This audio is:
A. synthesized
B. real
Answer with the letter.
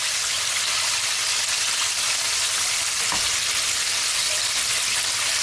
B